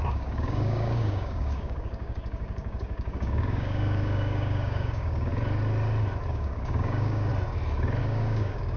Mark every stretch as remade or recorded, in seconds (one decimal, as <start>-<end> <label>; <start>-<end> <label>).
0.0-5.3 remade; 5.3-6.3 recorded; 6.3-7.3 remade; 7.3-8.0 recorded; 8.0-8.8 remade